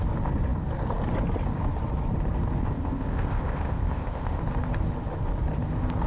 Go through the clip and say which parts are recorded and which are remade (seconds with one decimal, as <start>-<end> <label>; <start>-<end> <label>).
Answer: 0.0-2.6 recorded; 2.6-4.4 remade; 4.4-6.1 recorded